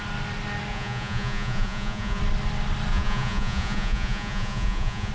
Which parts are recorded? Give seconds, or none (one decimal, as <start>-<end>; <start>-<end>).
0.0-0.7; 2.2-2.9